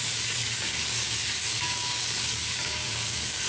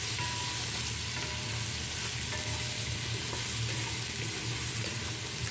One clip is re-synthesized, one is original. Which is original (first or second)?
second